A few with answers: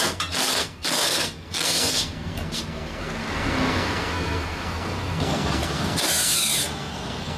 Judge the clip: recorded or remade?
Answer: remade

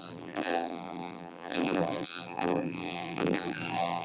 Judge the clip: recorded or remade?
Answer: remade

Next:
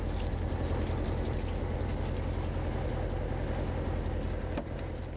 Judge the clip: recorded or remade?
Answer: recorded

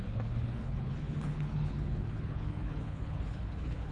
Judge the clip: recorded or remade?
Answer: remade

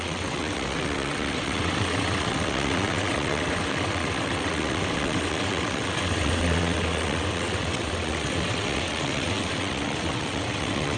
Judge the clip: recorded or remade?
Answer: remade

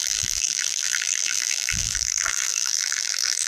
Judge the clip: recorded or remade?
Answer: remade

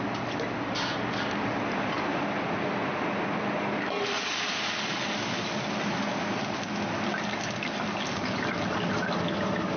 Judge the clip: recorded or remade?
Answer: recorded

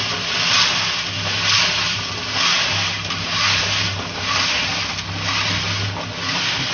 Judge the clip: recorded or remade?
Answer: recorded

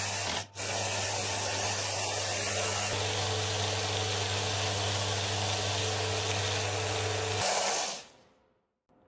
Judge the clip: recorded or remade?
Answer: recorded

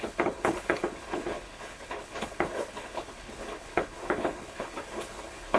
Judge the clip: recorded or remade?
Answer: remade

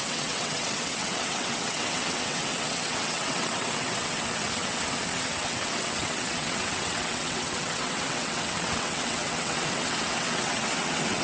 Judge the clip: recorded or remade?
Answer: remade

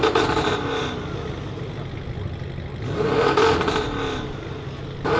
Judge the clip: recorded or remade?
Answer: recorded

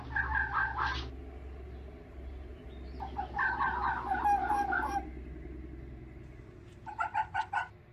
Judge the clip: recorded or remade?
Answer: recorded